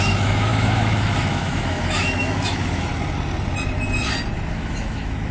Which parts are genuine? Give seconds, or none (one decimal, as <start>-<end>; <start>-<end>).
2.9-4.5